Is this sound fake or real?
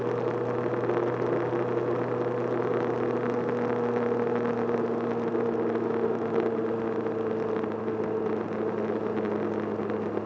real